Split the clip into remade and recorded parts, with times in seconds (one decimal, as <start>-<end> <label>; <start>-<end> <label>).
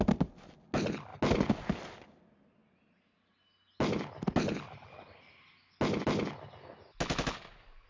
0.0-7.9 recorded